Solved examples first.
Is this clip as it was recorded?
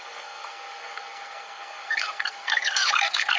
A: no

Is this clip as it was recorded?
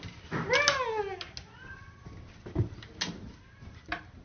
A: yes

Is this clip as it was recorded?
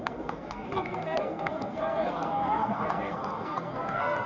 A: no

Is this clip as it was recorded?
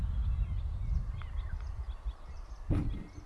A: yes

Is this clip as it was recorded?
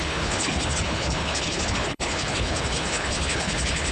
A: no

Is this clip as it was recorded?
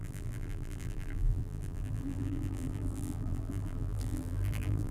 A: no